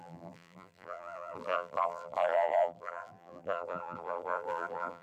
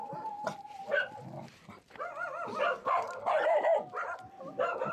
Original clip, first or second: second